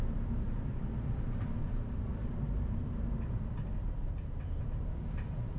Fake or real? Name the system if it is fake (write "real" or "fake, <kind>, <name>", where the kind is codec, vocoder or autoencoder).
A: fake, vocoder, BigVGAN v2